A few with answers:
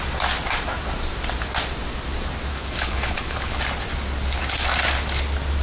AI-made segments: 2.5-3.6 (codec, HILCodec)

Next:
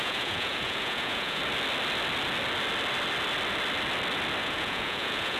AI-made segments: 0.0-1.4 (vocoder, Vocos); 4.4-5.4

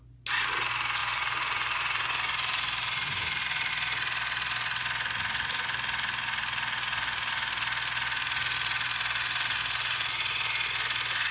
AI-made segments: 1.0-3.7 (vocoder, BigVGAN v2)

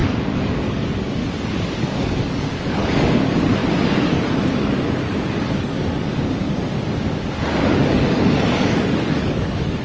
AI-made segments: 0.0-1.2 (codec, DAC); 1.8-6.7; 7.6-9.8